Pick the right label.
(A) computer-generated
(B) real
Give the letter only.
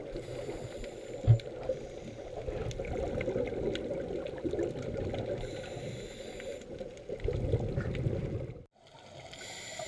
B